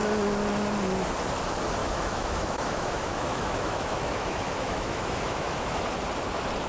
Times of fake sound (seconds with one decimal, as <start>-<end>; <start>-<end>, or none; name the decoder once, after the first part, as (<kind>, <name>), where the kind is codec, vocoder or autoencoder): 1.8-5.8 (autoencoder, DAC-VAE)